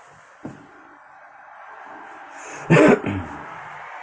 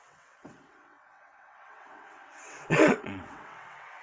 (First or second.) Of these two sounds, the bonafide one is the first